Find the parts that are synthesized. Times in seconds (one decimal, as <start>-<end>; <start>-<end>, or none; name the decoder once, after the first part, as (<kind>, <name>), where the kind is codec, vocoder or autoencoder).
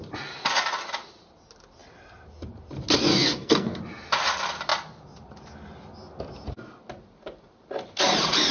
3.1-3.8 (codec, SNAC)